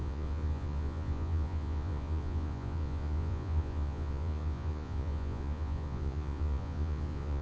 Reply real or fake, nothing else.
fake